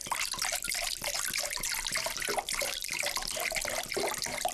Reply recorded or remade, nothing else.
recorded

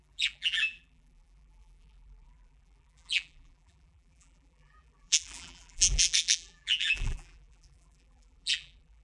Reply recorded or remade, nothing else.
remade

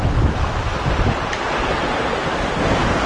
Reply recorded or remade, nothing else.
recorded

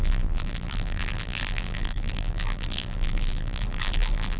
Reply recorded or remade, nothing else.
remade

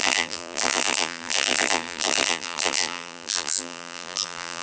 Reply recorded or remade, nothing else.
remade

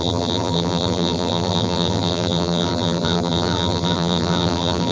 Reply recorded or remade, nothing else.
remade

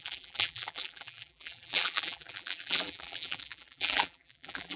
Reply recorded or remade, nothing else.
remade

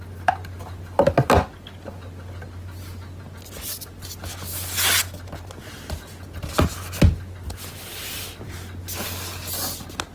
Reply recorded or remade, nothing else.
recorded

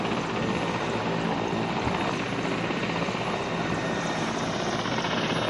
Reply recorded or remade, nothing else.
recorded